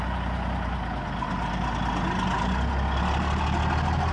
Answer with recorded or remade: recorded